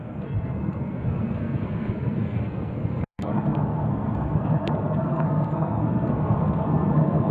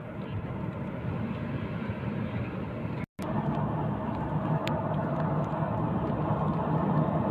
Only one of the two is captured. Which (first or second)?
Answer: second